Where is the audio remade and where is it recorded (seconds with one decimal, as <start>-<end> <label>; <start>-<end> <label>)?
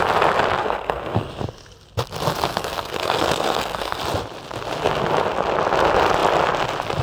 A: 0.0-0.6 recorded; 0.6-1.3 remade; 1.3-2.5 recorded; 2.5-4.0 remade; 4.0-7.0 recorded